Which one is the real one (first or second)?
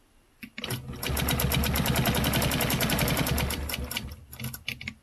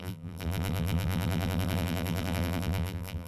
first